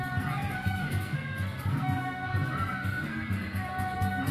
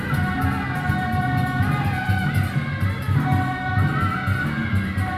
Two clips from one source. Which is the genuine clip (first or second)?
second